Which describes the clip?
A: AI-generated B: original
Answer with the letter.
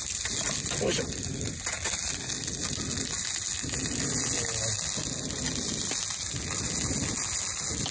B